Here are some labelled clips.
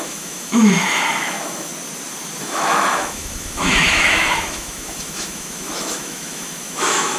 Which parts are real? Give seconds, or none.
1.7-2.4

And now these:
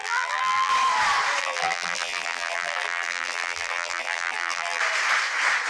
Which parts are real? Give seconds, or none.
0.7-1.4; 4.8-5.7

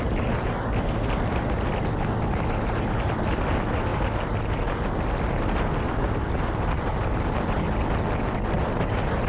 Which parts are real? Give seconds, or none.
0.0-9.3